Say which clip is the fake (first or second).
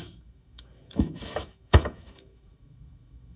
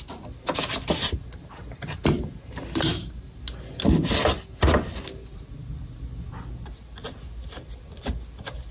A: first